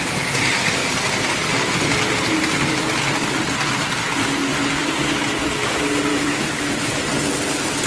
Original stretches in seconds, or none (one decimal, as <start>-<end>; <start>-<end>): 0.0-6.1; 6.7-7.9